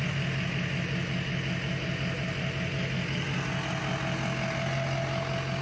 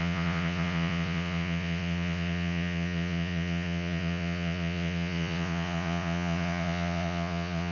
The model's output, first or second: second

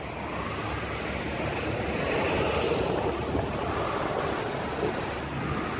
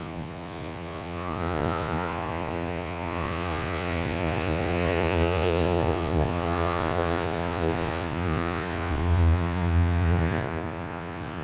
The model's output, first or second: second